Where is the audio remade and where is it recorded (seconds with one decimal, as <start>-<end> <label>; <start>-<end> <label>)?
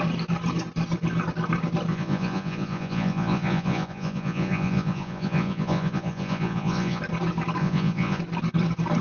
0.0-1.9 recorded; 1.9-7.0 remade; 7.0-7.6 recorded; 7.6-8.2 remade; 8.2-9.0 recorded